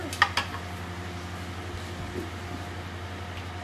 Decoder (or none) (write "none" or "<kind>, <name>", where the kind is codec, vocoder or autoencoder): none